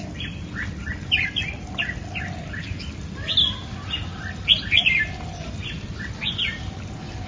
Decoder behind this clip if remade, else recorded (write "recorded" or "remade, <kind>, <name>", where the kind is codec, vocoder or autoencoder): recorded